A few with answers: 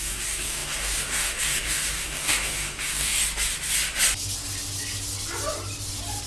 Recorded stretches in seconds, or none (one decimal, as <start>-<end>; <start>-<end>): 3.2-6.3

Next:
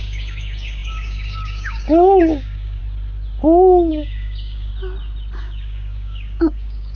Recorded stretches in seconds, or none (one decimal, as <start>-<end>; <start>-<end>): 2.8-3.9; 4.7-5.4

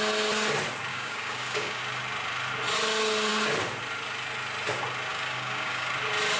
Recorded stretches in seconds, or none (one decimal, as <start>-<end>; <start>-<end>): 0.0-0.9; 1.8-5.1; 5.9-6.4